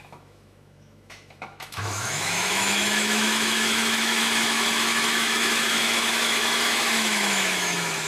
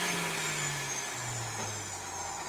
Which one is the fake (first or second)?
first